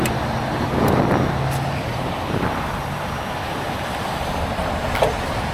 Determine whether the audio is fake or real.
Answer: real